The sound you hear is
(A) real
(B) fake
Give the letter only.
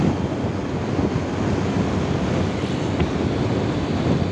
A